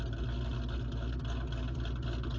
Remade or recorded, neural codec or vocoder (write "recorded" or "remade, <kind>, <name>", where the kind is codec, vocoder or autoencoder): recorded